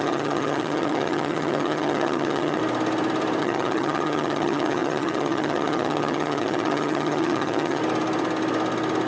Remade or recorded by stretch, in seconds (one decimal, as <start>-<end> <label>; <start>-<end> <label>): 0.0-2.6 remade; 2.6-3.4 recorded; 3.4-7.8 remade; 7.8-9.1 recorded

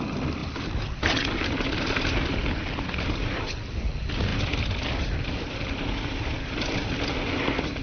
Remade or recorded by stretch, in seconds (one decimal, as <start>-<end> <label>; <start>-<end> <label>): 0.0-7.8 recorded